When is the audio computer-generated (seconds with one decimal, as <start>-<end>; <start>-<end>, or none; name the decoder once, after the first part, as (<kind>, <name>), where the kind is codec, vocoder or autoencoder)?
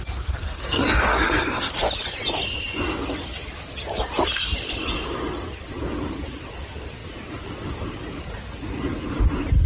0.4-1.7 (codec, SNAC)